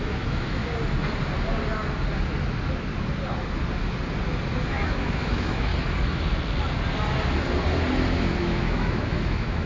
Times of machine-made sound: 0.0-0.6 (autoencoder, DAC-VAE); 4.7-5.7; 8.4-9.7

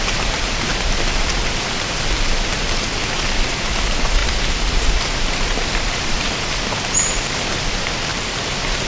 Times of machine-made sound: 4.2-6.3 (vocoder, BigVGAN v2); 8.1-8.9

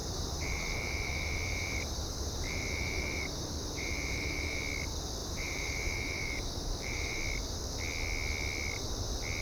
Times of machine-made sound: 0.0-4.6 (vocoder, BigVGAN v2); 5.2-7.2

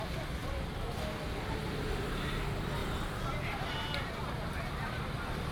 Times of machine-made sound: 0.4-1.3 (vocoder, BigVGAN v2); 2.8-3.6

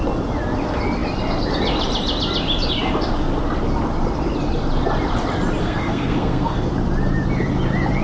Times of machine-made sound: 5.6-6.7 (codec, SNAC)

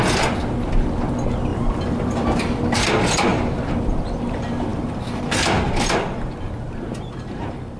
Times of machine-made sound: 1.5-2.6 (vocoder, BigVGAN v2); 4.7-7.8